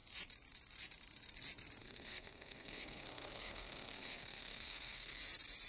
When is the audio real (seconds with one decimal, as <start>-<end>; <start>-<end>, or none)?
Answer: 0.0-1.8; 5.2-5.7